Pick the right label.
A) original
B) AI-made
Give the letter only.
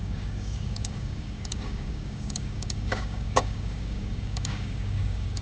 B